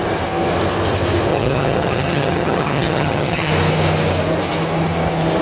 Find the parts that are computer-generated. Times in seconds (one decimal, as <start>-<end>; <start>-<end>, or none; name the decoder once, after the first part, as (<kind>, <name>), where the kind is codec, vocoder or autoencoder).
1.3-3.5 (vocoder, HiFi-GAN)